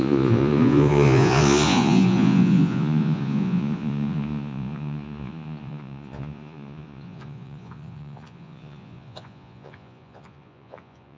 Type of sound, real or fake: fake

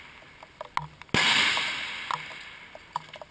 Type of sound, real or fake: real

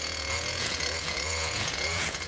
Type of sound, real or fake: fake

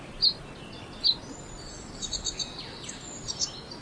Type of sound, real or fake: real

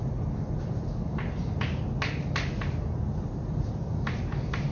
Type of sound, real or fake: real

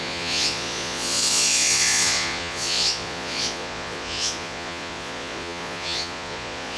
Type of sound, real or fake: fake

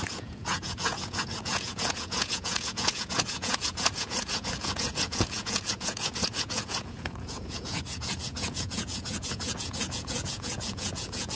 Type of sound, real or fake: fake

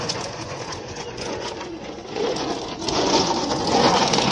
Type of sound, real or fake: fake